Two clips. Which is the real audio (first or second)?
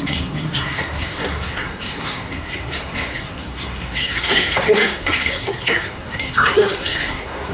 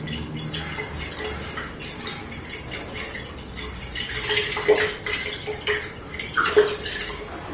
second